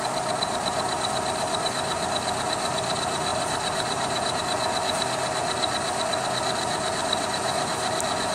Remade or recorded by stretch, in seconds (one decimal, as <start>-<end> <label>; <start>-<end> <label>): 0.0-3.3 recorded; 3.3-4.4 remade; 4.4-8.3 recorded